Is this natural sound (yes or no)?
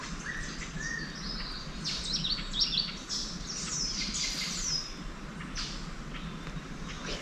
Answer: yes